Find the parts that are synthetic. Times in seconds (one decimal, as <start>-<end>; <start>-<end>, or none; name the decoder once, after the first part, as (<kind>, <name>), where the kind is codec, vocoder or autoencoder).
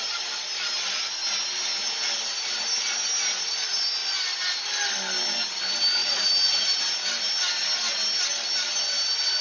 6.0-6.8 (vocoder, BigVGAN v2)